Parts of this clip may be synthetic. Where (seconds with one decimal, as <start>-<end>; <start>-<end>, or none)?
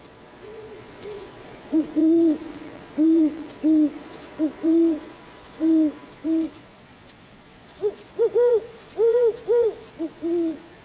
0.0-10.8